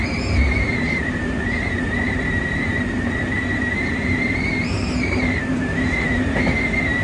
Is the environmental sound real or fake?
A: fake